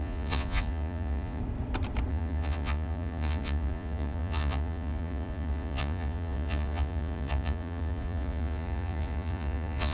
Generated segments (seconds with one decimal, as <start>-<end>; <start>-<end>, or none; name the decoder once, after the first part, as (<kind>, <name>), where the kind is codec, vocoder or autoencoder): 0.0-1.4 (vocoder, Vocos); 2.1-9.9